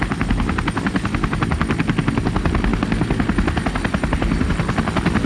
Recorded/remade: recorded